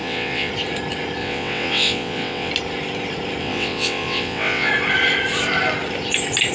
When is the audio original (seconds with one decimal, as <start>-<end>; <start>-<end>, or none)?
0.5-1.2; 2.5-3.4; 4.7-6.5